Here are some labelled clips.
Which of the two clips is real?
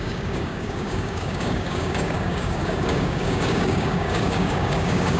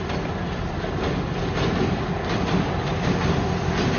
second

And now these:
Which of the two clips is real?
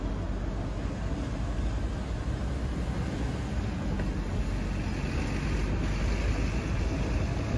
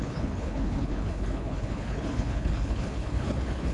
first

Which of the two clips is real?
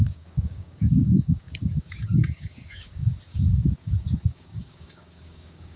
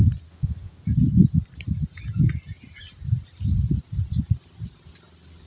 second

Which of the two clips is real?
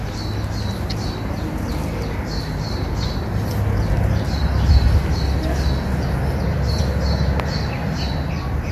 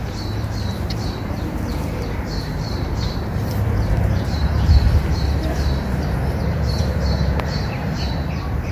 first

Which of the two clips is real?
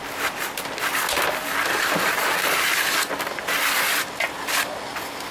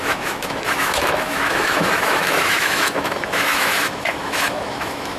first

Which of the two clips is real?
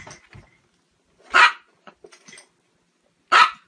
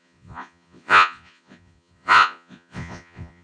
first